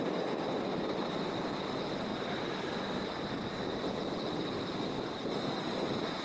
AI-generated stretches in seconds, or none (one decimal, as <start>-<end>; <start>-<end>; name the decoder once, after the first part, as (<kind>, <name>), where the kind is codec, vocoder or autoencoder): none